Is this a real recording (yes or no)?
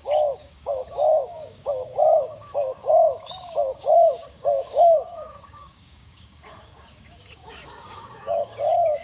no